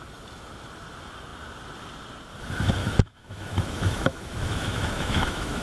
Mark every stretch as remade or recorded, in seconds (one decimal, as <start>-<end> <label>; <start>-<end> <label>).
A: 0.0-2.8 recorded; 2.8-5.6 remade